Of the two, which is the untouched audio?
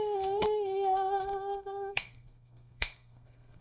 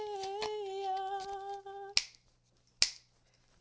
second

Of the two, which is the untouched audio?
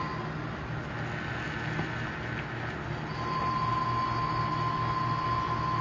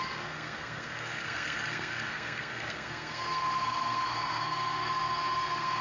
first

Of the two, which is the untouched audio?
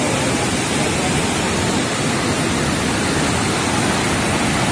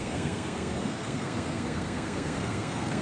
first